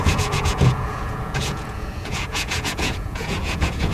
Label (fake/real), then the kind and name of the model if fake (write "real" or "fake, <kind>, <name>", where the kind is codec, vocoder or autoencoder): fake, vocoder, Vocos